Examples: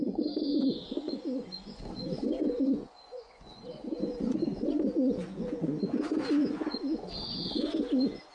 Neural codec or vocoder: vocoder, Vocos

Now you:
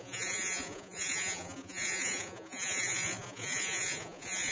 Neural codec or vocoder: vocoder, Vocos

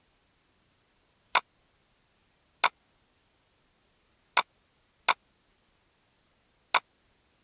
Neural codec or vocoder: none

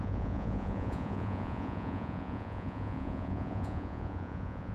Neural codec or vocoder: vocoder, Vocos